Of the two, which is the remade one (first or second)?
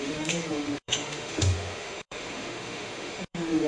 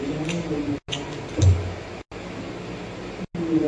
first